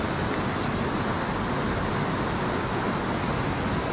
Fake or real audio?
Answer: real